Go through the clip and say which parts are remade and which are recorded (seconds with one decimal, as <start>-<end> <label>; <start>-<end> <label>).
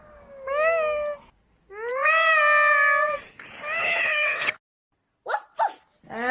0.0-3.8 recorded; 3.8-4.5 remade; 4.5-6.3 recorded